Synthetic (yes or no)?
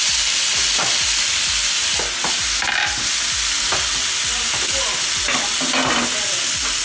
no